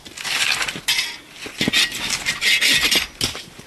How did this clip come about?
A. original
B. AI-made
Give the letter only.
A